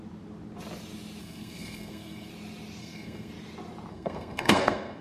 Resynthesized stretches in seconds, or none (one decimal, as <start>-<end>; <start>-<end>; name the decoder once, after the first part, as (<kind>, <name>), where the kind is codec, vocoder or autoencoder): 1.2-2.3 (codec, SNAC); 2.8-3.3; 3.9-5.0